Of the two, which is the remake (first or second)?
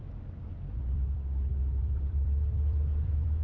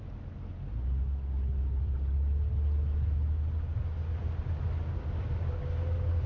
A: first